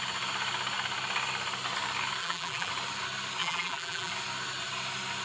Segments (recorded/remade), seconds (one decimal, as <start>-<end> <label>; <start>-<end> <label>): 0.0-2.2 recorded; 2.2-2.7 remade; 2.7-3.4 recorded; 3.4-4.1 remade; 4.1-5.2 recorded